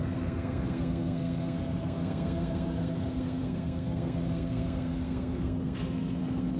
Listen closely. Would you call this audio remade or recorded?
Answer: remade